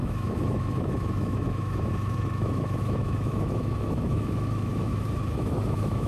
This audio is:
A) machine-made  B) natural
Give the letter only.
A